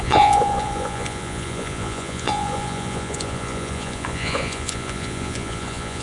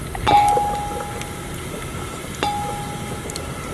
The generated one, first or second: first